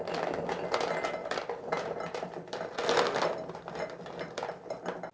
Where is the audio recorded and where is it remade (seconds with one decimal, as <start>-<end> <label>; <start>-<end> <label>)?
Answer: 0.0-1.2 recorded; 1.2-4.3 remade; 4.3-5.1 recorded